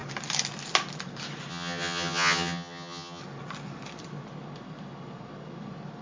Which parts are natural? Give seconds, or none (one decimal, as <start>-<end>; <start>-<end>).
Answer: 0.0-1.5; 3.2-6.0